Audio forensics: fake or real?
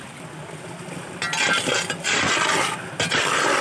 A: real